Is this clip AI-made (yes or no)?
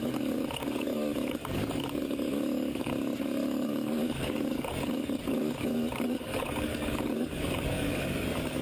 yes